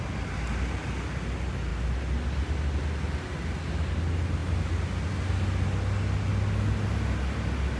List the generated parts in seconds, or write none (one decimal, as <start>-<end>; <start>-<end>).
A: none